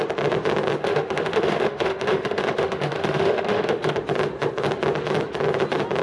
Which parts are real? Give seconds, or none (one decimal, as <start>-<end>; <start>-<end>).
0.0-0.8; 4.0-6.0